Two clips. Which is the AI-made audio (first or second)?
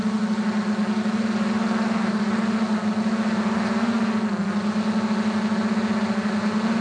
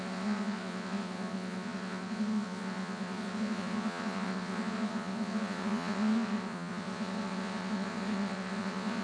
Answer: second